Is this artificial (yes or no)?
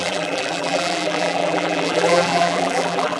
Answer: yes